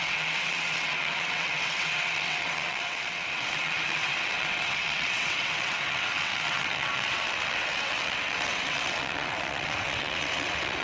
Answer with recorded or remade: remade